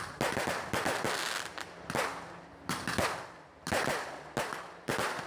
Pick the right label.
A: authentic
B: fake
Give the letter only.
A